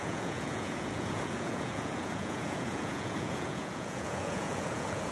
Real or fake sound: fake